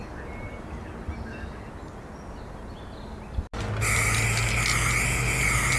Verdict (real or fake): real